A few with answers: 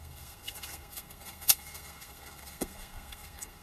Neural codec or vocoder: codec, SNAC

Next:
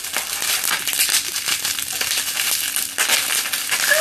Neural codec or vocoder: none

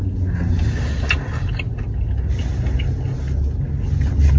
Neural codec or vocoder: none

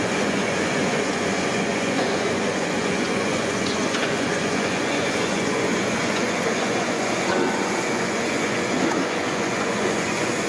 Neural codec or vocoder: vocoder, Vocos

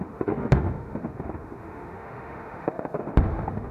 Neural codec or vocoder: autoencoder, DAC-VAE